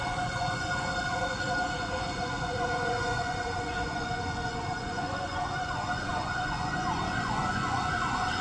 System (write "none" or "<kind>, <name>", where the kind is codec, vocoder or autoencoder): vocoder, Vocos